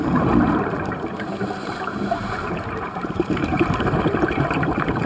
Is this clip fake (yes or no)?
yes